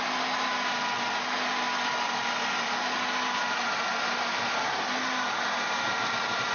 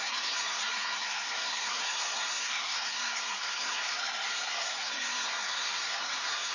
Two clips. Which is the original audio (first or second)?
first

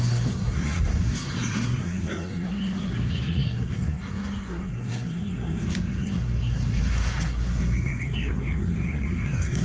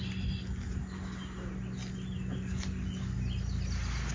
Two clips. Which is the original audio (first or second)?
second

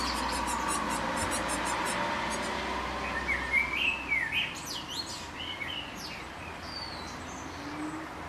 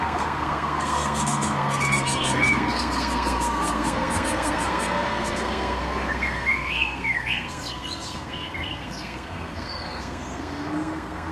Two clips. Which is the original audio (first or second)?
first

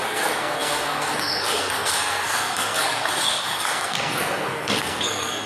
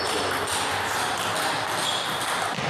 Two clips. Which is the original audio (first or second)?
second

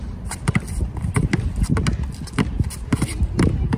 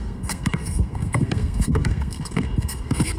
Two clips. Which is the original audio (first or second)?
first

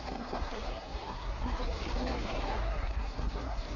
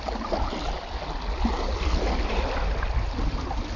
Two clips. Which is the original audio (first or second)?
second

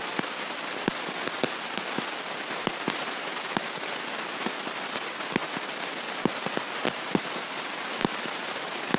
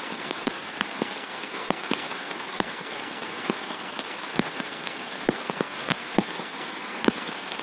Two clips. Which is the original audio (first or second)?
first